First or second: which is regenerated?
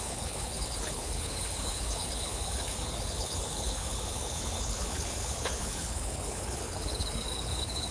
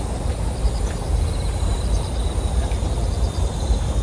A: first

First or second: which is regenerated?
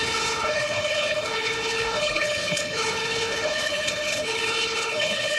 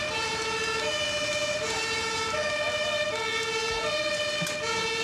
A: first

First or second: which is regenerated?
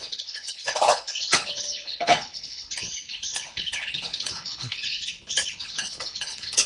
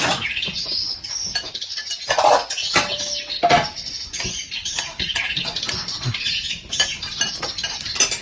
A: first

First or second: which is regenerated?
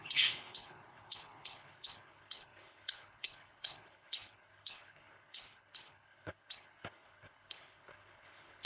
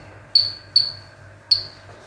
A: first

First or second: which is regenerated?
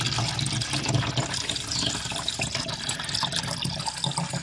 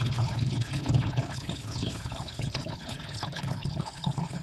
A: second